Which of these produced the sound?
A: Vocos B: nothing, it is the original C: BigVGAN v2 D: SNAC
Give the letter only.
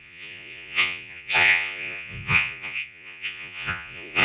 A